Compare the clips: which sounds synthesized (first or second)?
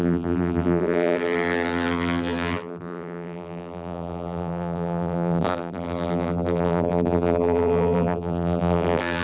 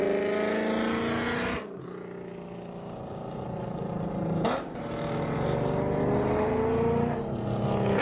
first